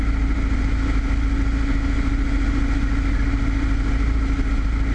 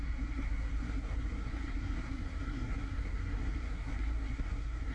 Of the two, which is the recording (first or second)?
first